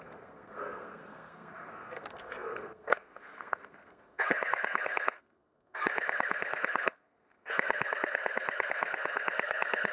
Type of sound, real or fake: fake